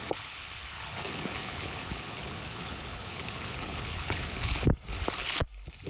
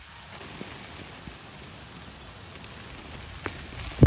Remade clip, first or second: first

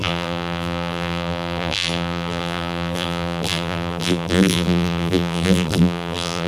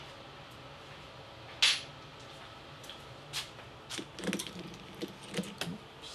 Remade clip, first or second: first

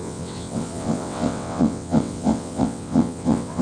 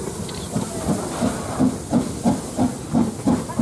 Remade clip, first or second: first